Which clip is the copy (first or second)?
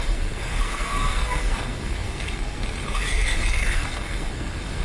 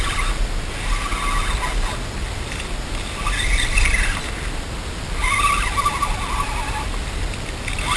first